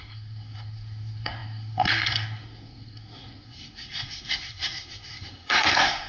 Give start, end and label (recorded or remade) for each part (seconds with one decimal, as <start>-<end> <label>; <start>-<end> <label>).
0.0-6.1 remade